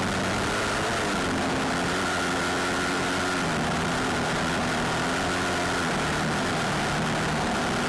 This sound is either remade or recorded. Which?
recorded